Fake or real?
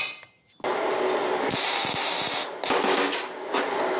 real